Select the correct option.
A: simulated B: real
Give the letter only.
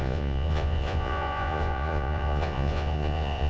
A